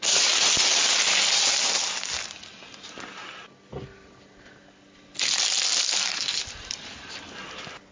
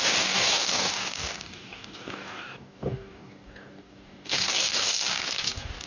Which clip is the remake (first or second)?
second